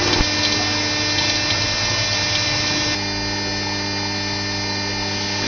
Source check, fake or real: real